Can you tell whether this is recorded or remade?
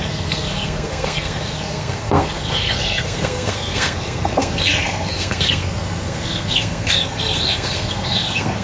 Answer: remade